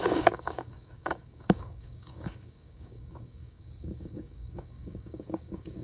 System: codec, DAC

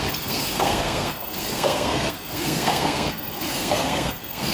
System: codec, SNAC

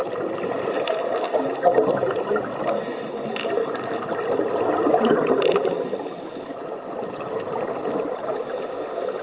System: none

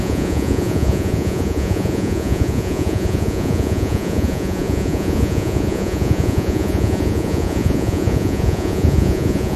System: vocoder, Vocos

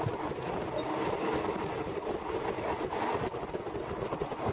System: none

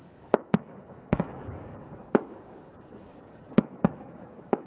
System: codec, DAC